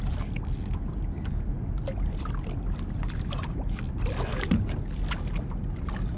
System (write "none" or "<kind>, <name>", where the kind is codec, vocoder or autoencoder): none